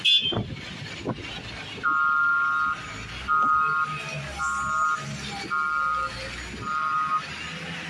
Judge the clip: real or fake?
real